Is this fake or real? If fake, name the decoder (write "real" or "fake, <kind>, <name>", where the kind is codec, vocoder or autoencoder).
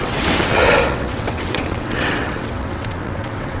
fake, vocoder, WaveNeXt